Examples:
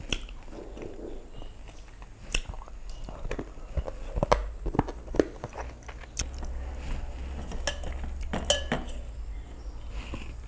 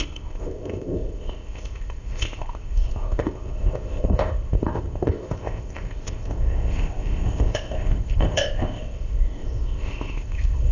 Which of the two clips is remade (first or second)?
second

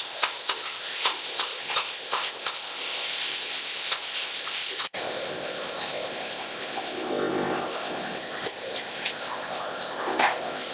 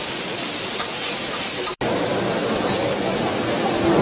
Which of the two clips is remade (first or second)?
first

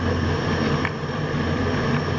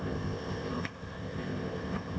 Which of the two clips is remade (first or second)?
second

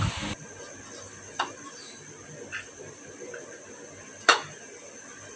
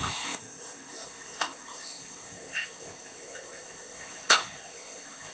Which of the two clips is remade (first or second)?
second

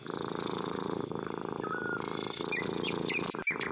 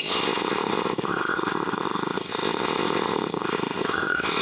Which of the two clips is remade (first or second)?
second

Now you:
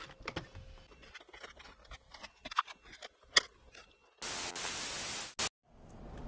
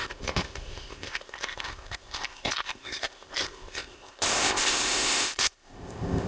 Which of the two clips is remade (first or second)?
second